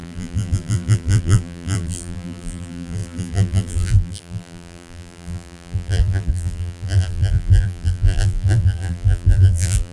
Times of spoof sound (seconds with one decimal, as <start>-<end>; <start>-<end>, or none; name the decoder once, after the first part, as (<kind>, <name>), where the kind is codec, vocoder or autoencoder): 0.0-9.9 (vocoder, BigVGAN v2)